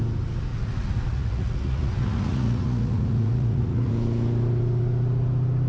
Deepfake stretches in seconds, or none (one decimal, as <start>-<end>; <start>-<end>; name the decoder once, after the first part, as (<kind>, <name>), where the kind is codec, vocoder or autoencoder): 0.5-3.9 (vocoder, Vocos)

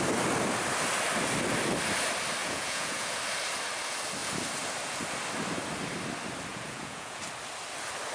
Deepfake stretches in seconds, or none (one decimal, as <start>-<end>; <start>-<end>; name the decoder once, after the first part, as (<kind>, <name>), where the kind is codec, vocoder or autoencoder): 2.4-3.2 (vocoder, Vocos); 6.5-7.2

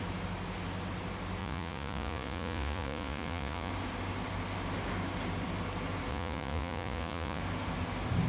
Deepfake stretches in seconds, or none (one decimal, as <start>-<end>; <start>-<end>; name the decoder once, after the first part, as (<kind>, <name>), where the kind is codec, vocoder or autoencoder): 1.4-3.7 (vocoder, Vocos); 6.1-7.4

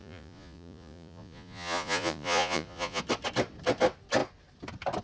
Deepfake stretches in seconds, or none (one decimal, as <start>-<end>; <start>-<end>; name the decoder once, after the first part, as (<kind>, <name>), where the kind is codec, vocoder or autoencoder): 0.0-3.0 (vocoder, Vocos)

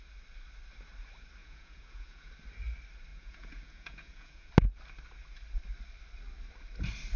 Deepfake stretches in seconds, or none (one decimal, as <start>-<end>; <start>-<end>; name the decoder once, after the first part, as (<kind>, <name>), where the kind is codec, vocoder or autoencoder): 1.4-2.3 (vocoder, Vocos); 3.1-4.5